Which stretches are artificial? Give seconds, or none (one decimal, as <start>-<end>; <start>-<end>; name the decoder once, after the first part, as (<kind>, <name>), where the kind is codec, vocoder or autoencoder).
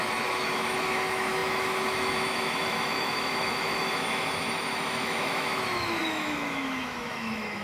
0.0-7.6 (autoencoder, DAC-VAE)